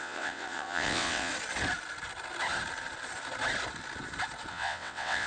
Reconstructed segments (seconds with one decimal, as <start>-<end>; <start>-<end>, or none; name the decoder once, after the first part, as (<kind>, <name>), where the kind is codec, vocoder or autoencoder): 0.0-1.3 (vocoder, WaveNeXt); 4.5-5.3